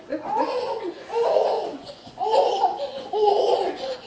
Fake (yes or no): yes